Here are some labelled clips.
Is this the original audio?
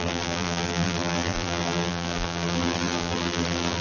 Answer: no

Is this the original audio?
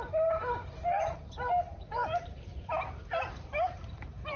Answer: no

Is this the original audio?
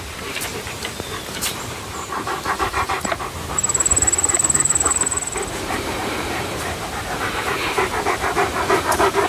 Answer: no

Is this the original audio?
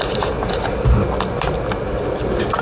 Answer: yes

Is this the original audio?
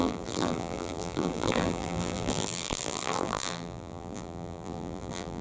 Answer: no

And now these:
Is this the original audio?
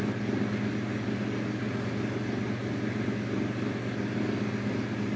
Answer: yes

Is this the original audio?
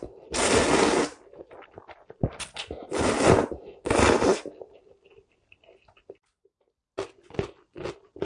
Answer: yes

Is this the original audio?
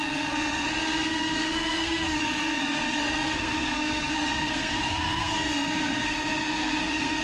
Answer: no